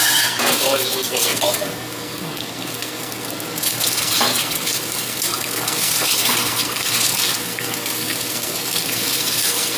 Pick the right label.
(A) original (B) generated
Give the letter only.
B